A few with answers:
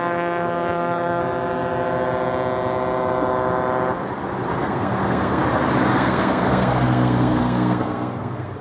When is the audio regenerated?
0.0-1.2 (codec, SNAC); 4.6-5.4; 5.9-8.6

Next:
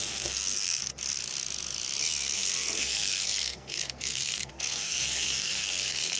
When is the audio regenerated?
0.0-0.8 (codec, SNAC); 2.0-6.2

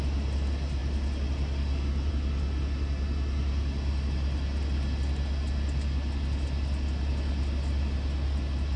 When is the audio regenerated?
none

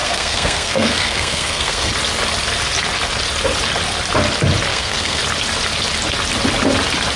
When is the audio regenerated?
0.0-1.9 (codec, SNAC); 4.7-5.2